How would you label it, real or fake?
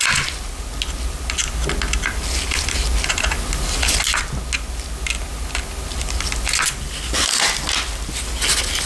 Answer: real